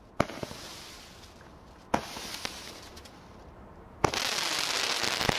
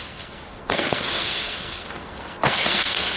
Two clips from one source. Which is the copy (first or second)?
second